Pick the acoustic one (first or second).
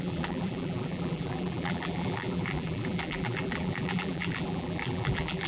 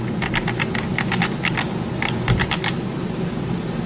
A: second